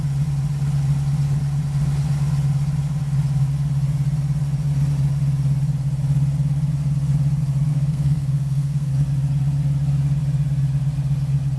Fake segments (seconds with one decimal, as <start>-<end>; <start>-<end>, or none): 7.7-8.9